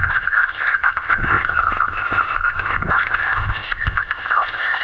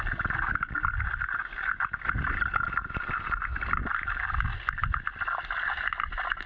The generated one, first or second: first